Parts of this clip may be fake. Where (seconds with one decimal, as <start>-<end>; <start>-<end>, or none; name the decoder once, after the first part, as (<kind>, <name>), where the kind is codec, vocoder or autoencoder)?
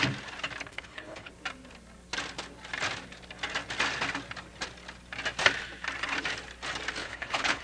0.7-1.3 (codec, HILCodec); 7.0-7.6